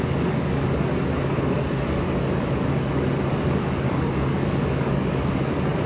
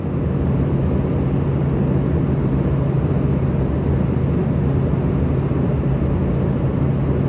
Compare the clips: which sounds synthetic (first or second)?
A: first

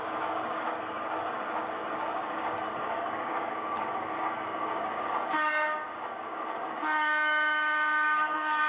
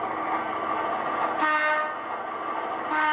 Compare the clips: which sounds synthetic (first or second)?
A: first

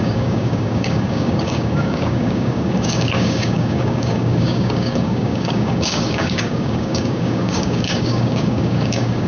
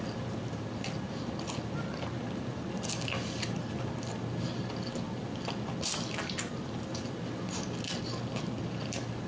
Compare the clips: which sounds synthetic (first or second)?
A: first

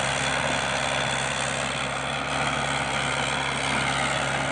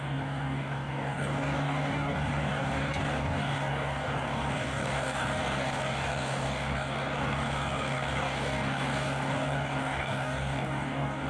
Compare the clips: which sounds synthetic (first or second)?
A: second